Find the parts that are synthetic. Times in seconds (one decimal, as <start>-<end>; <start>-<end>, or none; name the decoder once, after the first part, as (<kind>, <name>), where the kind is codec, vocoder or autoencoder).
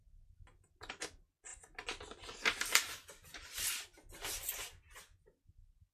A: none